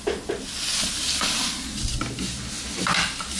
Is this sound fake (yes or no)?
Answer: no